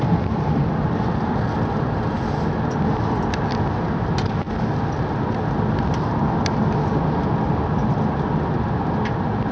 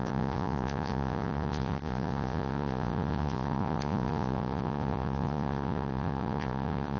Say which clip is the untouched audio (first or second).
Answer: first